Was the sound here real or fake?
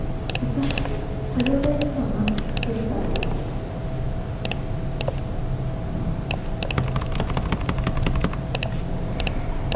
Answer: real